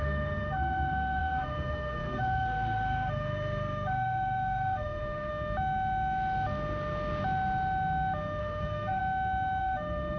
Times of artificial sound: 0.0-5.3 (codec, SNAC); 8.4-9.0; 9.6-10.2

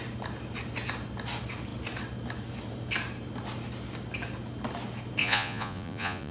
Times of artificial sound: 5.2-6.3 (vocoder, Vocos)

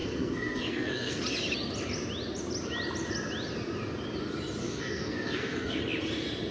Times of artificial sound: 0.0-1.2 (codec, SNAC); 4.6-5.8

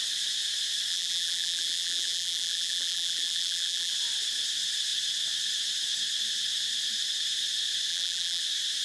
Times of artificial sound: 0.9-3.9 (vocoder, BigVGAN v2); 7.9-8.4

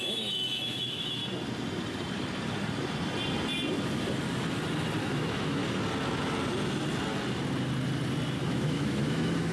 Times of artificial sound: 0.0-1.2 (autoencoder, DAC-VAE); 5.0-5.6; 8.4-9.5

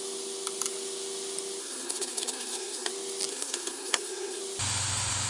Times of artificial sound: 1.6-2.9 (codec, SNAC); 3.3-4.4

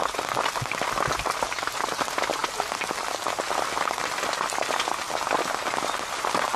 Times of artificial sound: none

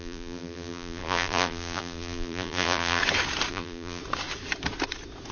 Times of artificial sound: 0.0-3.0 (vocoder, BigVGAN v2); 3.5-4.0